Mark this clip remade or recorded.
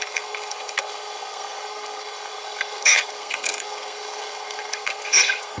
remade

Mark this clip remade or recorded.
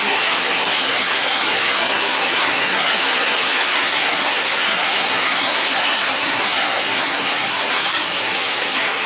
remade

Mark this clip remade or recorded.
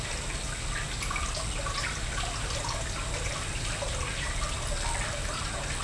recorded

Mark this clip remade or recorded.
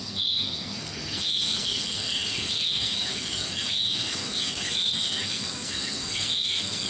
remade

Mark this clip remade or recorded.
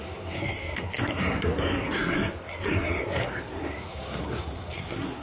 remade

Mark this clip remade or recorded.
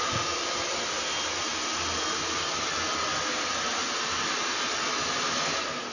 recorded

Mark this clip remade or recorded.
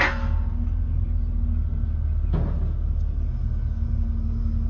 recorded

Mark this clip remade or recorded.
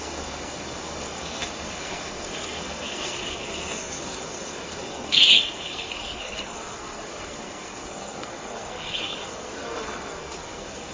remade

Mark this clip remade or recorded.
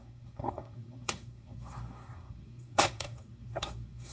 remade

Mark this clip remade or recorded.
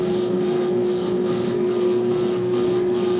remade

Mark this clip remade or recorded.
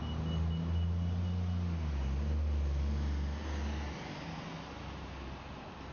recorded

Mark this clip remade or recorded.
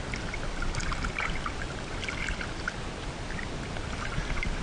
recorded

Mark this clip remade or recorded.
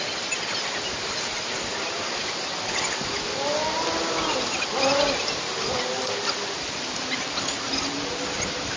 recorded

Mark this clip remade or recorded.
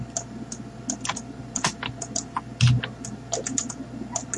recorded